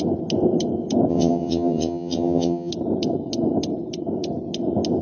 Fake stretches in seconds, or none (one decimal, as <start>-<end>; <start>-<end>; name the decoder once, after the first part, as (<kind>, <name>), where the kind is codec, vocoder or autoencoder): 1.1-2.7 (vocoder, HiFi-GAN)